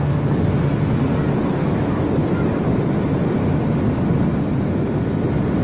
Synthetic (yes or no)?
no